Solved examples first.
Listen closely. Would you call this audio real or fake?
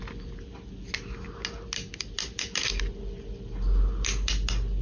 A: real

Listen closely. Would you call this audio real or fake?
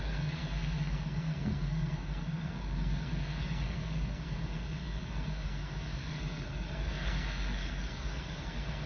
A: fake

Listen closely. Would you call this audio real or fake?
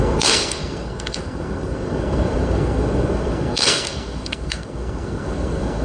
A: fake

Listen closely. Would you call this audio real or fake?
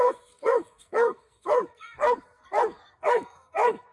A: fake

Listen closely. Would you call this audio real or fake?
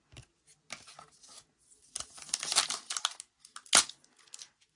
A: real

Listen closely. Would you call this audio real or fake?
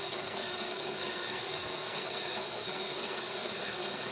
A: fake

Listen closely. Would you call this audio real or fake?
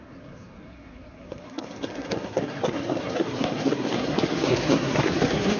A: fake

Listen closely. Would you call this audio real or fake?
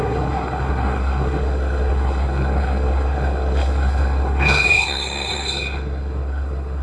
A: fake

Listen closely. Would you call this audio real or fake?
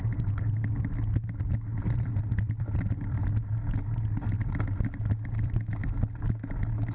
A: real